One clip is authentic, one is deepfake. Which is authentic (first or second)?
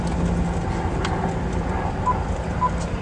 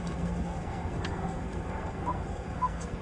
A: first